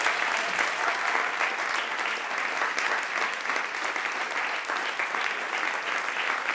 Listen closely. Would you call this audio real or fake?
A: real